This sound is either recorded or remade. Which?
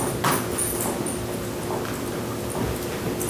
recorded